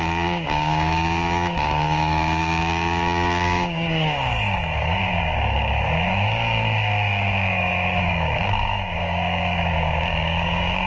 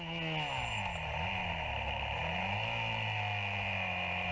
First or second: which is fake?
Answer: first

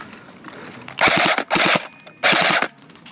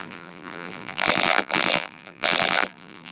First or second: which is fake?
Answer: second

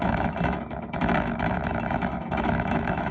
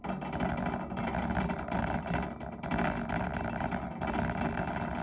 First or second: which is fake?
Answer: first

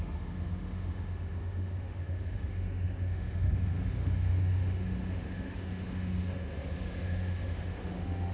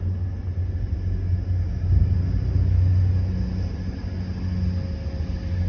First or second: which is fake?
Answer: first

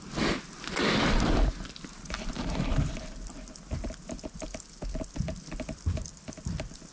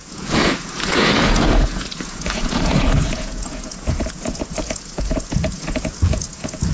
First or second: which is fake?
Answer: second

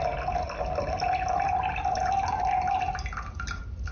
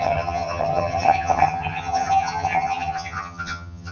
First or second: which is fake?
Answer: second